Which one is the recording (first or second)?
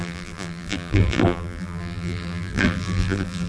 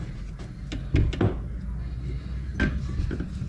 second